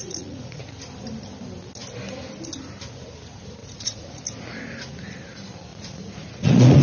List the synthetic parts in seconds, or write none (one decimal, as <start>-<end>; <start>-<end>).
0.0-0.6; 3.6-4.2; 5.7-6.8

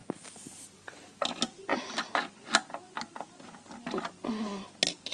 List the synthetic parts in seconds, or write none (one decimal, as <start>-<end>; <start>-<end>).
none

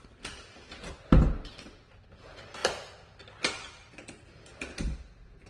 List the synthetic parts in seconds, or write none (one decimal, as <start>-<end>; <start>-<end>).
none